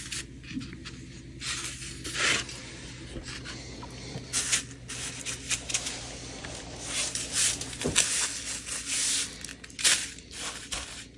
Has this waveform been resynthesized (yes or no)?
no